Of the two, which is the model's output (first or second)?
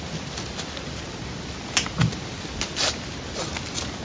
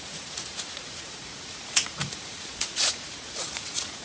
second